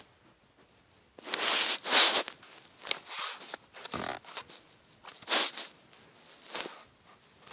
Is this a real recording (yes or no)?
yes